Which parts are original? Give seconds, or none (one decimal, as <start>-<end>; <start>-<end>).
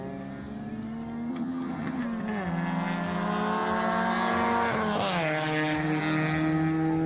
0.0-1.3; 2.0-7.1